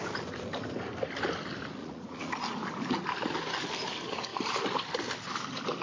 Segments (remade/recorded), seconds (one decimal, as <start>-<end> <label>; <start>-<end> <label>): 0.0-1.8 recorded; 1.8-2.4 remade; 2.4-5.8 recorded